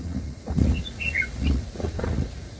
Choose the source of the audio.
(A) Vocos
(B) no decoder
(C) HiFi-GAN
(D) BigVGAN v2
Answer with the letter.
A